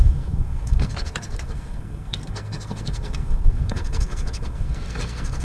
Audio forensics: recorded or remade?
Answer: remade